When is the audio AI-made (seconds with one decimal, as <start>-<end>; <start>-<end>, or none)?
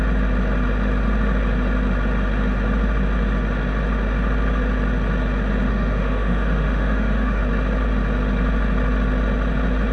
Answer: 5.7-7.4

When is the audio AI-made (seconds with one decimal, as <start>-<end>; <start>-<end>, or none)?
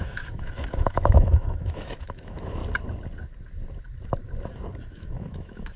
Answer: 0.0-2.6; 4.9-5.8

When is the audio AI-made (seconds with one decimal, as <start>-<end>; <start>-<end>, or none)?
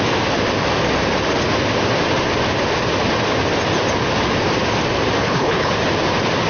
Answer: 5.2-5.7